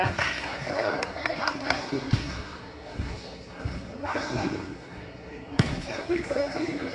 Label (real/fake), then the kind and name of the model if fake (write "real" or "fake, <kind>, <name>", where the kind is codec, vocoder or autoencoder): fake, codec, SNAC